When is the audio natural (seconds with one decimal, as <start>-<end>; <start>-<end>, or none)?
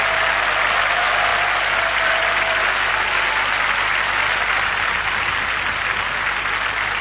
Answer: 0.0-7.0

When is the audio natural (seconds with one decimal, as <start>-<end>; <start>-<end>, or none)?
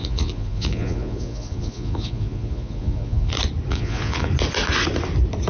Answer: 3.3-3.7; 4.3-5.5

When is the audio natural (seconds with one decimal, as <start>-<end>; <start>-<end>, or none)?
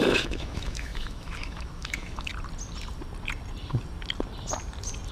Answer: 2.3-5.1